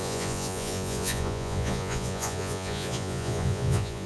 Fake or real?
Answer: fake